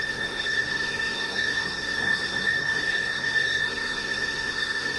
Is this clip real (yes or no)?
no